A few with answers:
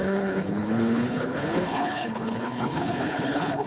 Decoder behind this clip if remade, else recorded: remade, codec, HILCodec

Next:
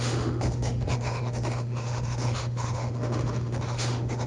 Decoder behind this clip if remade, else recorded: remade, autoencoder, DAC-VAE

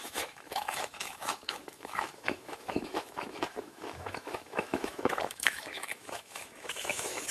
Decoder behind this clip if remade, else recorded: remade, autoencoder, DAC-VAE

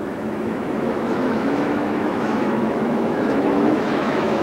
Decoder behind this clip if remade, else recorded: remade, autoencoder, DAC-VAE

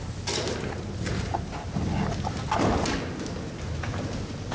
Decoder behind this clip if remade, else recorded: recorded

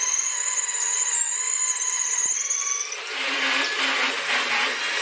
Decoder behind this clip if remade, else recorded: recorded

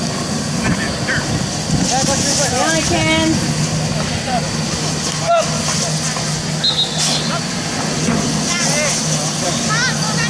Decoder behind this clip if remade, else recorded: recorded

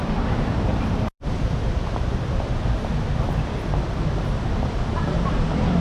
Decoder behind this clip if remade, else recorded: remade, vocoder, BigVGAN v2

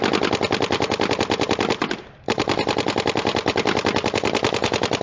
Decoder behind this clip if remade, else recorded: recorded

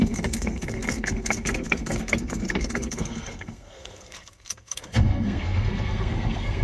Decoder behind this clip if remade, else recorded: remade, codec, SNAC